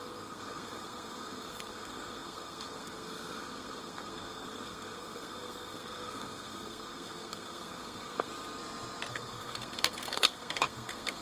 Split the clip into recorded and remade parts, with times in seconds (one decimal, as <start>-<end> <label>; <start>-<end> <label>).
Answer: 0.0-8.3 remade; 8.3-9.1 recorded; 9.1-11.2 remade